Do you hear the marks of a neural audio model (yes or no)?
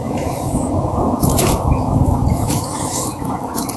yes